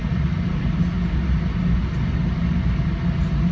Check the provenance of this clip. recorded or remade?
recorded